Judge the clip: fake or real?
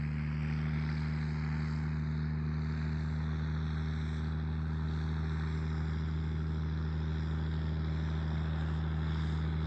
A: real